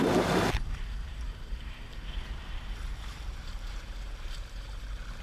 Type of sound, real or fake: fake